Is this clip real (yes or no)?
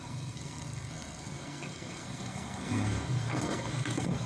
no